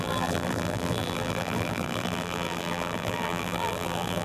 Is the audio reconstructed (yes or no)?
yes